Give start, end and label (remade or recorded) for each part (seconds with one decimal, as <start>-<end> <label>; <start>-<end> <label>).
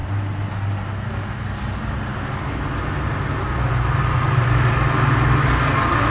0.0-6.1 recorded